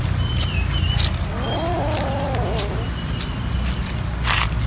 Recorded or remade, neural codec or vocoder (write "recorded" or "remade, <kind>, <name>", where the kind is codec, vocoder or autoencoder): recorded